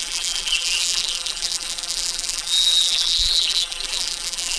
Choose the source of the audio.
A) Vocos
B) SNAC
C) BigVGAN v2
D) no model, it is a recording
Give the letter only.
C